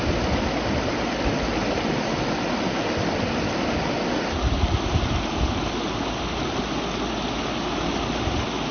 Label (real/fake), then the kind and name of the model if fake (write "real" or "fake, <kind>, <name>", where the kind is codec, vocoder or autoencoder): real